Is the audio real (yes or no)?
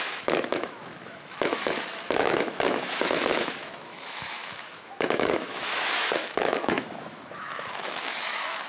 no